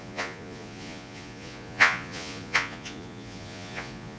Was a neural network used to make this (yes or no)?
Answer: yes